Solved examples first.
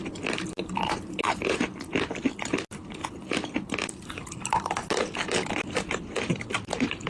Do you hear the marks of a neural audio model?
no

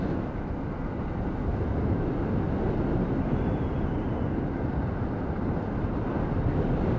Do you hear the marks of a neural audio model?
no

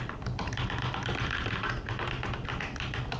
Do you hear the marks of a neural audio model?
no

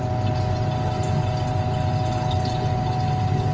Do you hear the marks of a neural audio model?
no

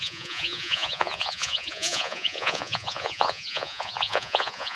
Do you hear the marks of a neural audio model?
yes